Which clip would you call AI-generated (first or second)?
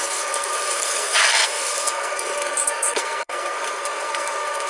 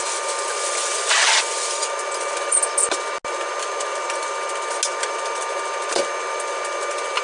first